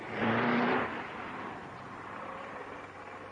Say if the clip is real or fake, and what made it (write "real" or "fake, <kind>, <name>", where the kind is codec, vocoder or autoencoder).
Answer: fake, vocoder, BigVGAN v2